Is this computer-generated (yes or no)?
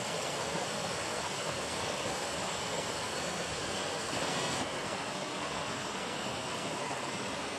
yes